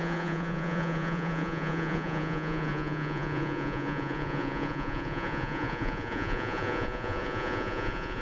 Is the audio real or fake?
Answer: fake